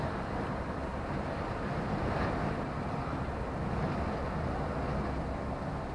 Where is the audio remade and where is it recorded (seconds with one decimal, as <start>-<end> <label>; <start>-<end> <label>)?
0.0-0.9 recorded; 0.9-2.5 remade; 2.5-5.9 recorded